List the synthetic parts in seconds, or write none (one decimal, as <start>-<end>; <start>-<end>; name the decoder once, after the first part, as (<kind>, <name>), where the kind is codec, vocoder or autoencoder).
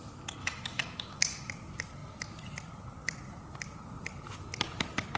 0.4-1.5 (autoencoder, DAC-VAE)